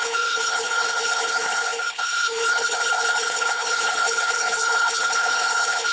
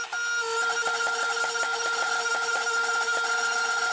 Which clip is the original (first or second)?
second